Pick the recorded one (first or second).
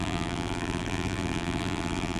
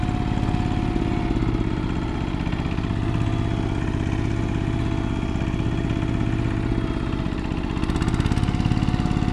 second